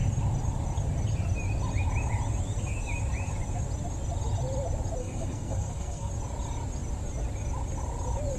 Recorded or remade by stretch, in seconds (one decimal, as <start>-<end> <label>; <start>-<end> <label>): 0.0-5.0 recorded; 5.0-6.1 remade; 6.1-8.4 recorded